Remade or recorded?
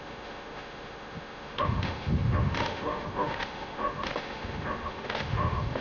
remade